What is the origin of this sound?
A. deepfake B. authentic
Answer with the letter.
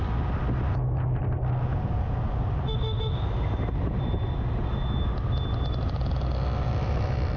B